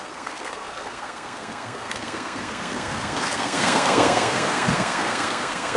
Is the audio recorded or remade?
remade